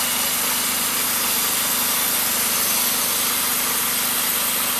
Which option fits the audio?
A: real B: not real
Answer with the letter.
A